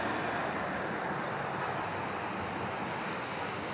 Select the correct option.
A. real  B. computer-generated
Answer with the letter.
A